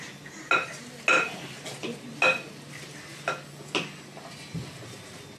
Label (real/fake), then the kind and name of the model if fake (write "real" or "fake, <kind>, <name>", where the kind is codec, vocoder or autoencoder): real